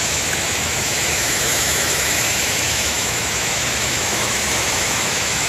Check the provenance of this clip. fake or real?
fake